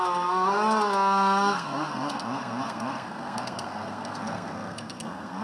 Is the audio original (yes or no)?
no